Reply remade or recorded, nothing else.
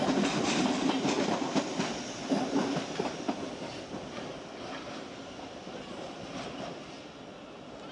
recorded